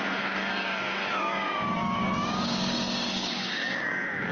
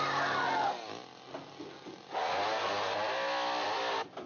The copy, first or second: first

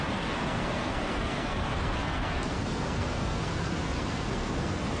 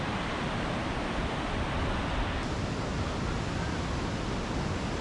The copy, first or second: first